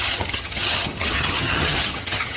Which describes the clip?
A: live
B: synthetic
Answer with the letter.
B